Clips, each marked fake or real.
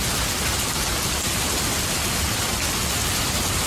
real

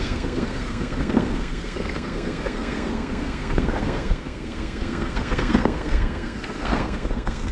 fake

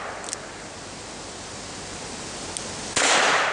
real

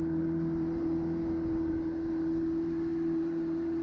real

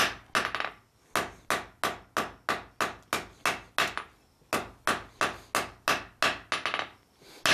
real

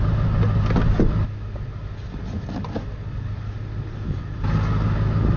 real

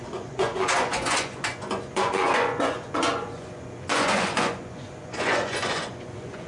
fake